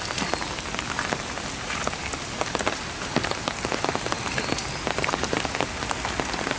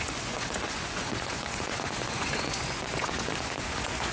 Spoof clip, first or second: second